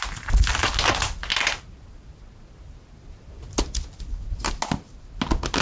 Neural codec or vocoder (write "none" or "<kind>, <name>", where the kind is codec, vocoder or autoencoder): none